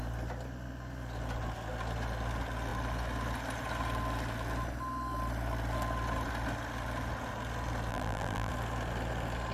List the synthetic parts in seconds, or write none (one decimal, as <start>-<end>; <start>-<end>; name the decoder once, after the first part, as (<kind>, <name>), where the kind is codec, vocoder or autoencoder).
7.9-8.5 (vocoder, BigVGAN v2)

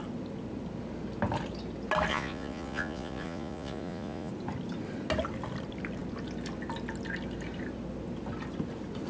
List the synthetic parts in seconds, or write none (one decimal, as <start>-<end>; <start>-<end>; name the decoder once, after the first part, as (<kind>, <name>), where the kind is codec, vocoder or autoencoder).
2.1-4.3 (vocoder, Vocos)

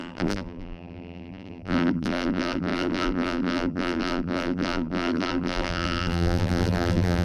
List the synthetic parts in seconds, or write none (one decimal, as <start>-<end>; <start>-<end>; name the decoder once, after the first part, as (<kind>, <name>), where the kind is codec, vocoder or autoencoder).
0.0-7.2 (vocoder, BigVGAN v2)

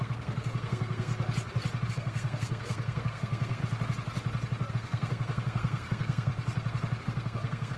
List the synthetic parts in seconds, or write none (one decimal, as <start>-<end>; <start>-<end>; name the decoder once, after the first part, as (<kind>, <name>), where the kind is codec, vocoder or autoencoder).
0.0-1.1 (codec, SNAC); 1.9-3.6; 4.7-6.3; 7.0-7.8

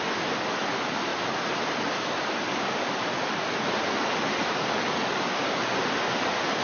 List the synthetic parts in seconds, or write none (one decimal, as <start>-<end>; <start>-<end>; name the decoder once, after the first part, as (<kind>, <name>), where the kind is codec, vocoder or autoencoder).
none

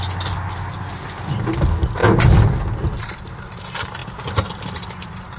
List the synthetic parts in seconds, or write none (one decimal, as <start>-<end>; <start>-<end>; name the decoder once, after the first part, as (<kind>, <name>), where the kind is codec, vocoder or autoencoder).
none

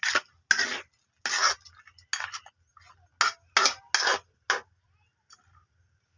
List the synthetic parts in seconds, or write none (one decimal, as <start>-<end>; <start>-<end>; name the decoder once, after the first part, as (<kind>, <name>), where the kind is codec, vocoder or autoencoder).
none